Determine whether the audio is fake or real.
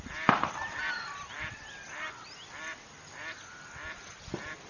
real